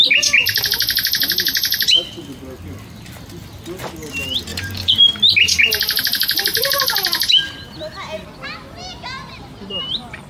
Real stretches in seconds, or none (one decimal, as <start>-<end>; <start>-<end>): 0.0-10.3